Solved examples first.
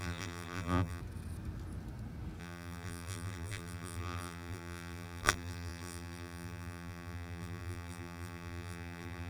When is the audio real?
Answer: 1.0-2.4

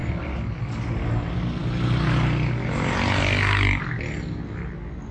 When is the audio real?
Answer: 0.0-5.1

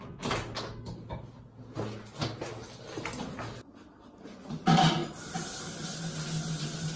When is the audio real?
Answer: 0.0-7.0

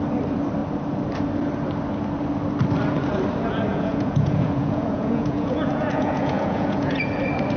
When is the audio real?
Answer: 0.0-3.7; 7.1-7.6

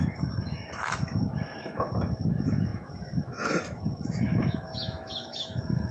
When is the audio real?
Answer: none